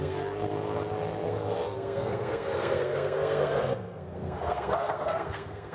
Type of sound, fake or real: fake